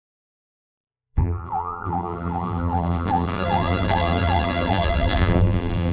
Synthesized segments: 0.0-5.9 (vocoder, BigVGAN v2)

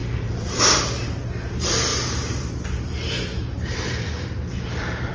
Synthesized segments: 0.0-0.6 (vocoder, BigVGAN v2); 1.9-2.5; 3.3-5.1

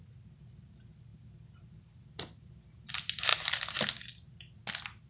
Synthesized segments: none

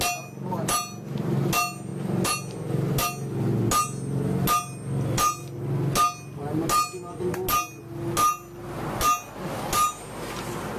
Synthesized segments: none

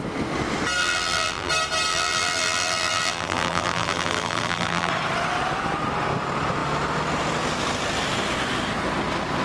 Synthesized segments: 0.8-1.5 (vocoder, BigVGAN v2); 1.9-4.9

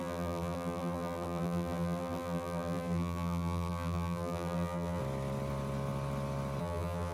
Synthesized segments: 0.0-5.0 (vocoder, BigVGAN v2); 6.6-7.1